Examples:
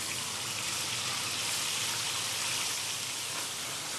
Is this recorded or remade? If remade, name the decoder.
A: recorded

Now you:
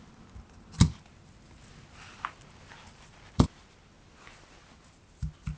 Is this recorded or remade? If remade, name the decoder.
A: recorded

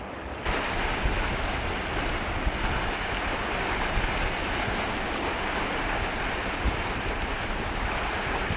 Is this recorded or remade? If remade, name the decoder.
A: recorded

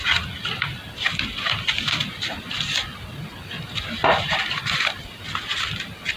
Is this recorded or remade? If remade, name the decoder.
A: recorded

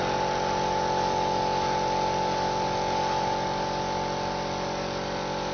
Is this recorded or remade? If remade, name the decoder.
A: recorded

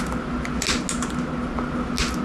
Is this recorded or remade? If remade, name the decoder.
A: recorded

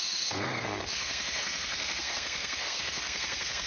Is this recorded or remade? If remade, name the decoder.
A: remade, codec, SNAC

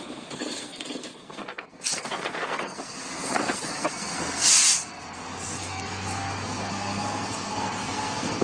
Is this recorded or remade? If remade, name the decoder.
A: remade, codec, SNAC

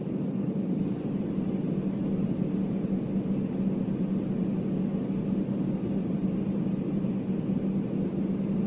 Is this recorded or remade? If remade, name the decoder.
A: recorded